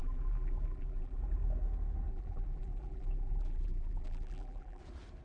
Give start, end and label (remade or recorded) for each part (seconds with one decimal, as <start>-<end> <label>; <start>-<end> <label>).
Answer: 0.0-1.2 remade; 1.2-2.1 recorded; 2.1-4.8 remade; 4.8-5.2 recorded